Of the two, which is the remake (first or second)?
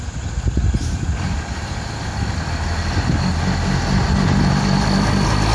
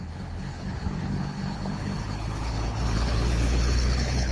second